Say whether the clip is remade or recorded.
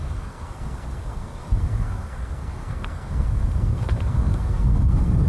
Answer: remade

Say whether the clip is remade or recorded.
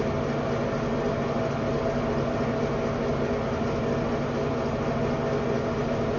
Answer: recorded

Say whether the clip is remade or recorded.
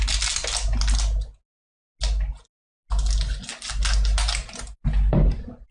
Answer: recorded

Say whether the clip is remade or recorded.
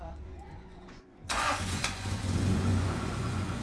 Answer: remade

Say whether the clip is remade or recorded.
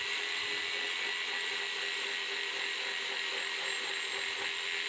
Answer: recorded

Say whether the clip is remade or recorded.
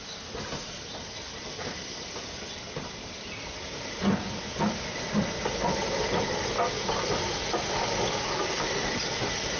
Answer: recorded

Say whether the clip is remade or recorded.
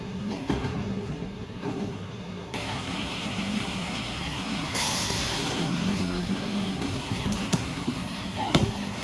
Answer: remade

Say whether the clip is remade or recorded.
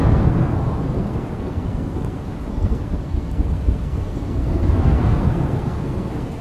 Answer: remade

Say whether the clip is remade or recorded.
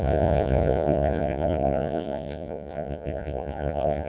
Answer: remade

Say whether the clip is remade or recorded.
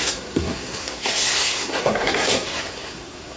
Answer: remade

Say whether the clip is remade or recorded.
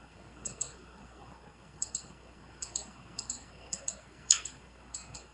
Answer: remade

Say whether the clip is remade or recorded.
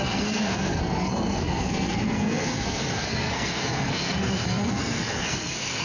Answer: remade